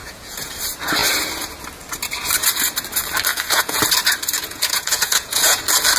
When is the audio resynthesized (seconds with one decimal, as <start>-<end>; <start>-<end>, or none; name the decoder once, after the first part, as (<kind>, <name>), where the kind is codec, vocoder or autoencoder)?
0.0-0.5 (vocoder, Vocos); 3.3-3.8; 4.4-5.6